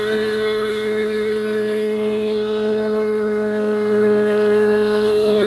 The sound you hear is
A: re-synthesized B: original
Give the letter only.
A